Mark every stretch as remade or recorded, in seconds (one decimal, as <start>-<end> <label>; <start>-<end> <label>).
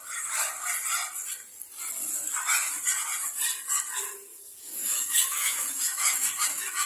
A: 0.0-4.3 recorded; 4.3-6.9 remade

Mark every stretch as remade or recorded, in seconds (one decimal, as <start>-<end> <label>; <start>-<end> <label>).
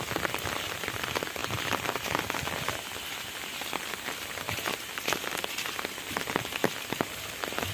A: 0.0-7.7 recorded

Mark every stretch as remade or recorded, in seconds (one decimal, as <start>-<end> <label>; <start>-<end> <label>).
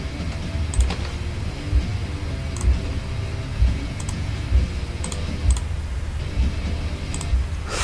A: 0.0-3.5 recorded; 3.5-4.3 remade; 4.3-7.8 recorded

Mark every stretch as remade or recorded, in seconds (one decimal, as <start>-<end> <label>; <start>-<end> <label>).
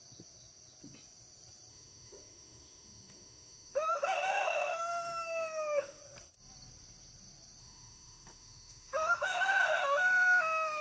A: 0.0-1.7 recorded; 1.7-6.0 remade; 6.0-7.6 recorded; 7.6-10.8 remade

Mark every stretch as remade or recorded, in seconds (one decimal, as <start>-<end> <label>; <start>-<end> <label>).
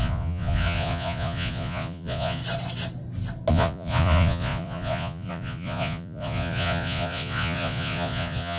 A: 0.0-2.4 remade; 2.4-3.5 recorded; 3.5-8.6 remade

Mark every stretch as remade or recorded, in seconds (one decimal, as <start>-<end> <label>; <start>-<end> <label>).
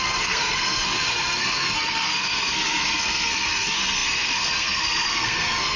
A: 0.0-5.8 remade